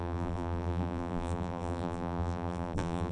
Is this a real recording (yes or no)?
no